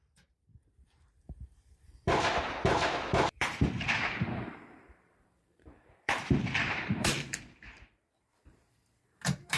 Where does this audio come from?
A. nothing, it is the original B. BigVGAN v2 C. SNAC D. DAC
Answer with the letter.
B